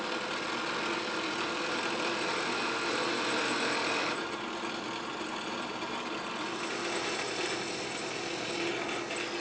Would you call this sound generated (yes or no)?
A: no